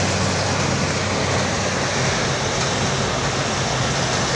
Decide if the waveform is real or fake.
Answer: real